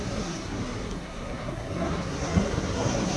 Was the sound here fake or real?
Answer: fake